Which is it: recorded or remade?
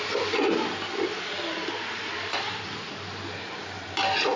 recorded